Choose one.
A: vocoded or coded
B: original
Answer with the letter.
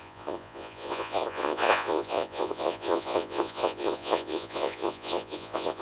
A